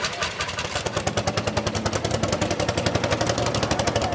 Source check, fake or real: real